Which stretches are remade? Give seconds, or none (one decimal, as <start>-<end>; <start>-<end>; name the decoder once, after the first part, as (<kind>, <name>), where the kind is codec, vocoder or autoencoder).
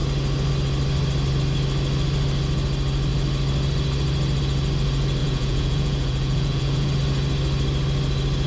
5.2-6.9 (vocoder, Vocos)